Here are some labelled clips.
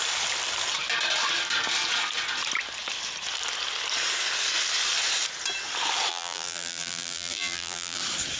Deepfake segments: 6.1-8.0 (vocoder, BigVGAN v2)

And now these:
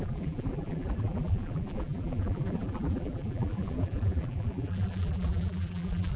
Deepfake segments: 0.0-6.2 (vocoder, BigVGAN v2)

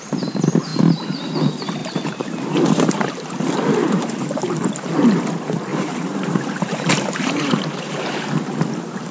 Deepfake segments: 1.8-3.3 (vocoder, BigVGAN v2); 3.8-4.9; 5.7-8.6

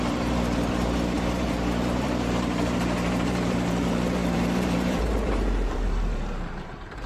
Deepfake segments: 0.0-7.1 (vocoder, BigVGAN v2)

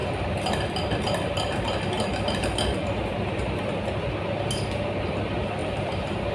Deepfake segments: 5.6-6.3 (vocoder, BigVGAN v2)

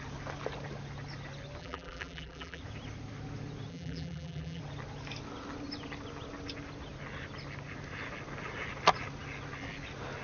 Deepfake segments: 1.6-2.6 (vocoder, BigVGAN v2); 3.7-4.6

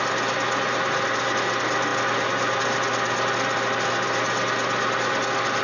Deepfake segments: none

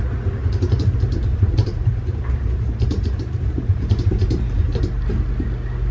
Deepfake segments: 1.3-4.8 (vocoder, BigVGAN v2)